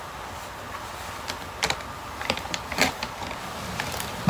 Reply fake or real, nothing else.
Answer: fake